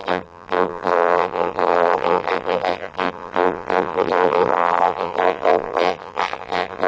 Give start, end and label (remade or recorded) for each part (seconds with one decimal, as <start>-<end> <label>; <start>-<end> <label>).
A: 0.0-6.9 remade